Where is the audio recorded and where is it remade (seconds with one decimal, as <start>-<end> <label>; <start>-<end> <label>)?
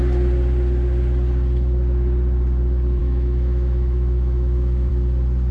0.0-3.0 recorded; 3.0-4.9 remade; 4.9-5.5 recorded